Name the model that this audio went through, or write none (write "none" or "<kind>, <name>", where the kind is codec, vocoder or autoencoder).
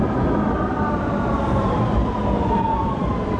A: none